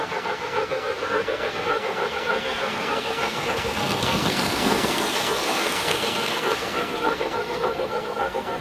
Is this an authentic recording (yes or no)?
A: no